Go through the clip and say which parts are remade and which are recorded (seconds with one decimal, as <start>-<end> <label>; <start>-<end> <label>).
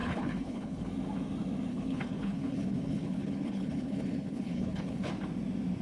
0.0-0.9 remade; 0.9-1.7 recorded; 1.7-5.1 remade; 5.1-5.8 recorded